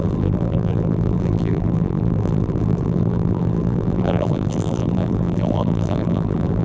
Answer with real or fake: fake